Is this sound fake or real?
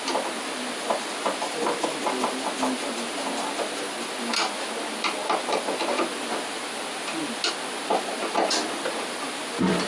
real